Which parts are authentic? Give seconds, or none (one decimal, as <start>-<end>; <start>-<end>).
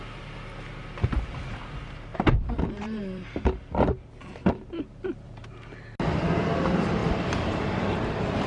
0.0-2.1; 3.3-7.0